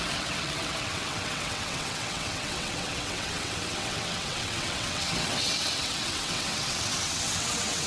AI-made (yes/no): yes